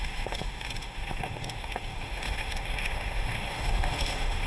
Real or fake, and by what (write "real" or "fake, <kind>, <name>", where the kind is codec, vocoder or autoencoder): fake, autoencoder, DAC-VAE